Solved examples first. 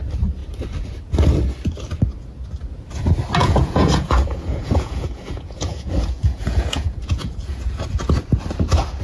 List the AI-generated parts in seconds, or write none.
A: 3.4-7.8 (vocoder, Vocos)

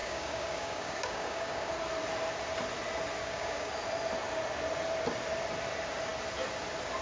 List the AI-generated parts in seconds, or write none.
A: 0.0-1.7 (codec, DAC); 3.2-3.7

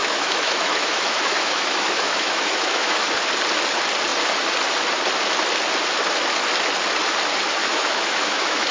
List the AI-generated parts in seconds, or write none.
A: 0.0-3.1 (autoencoder, DAC-VAE); 7.6-8.7